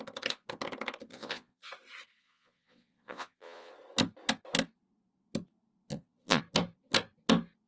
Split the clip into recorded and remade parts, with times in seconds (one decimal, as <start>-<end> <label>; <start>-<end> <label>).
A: 0.0-1.1 recorded; 1.1-1.7 remade; 1.7-2.2 recorded; 2.2-3.7 remade; 3.7-5.9 recorded; 5.9-6.4 remade; 6.4-7.7 recorded